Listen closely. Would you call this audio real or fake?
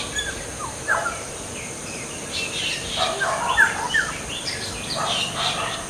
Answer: fake